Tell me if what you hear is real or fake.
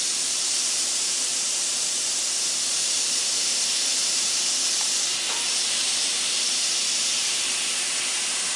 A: fake